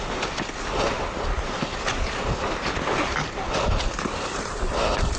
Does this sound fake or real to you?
real